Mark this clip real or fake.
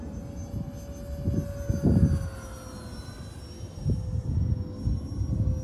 real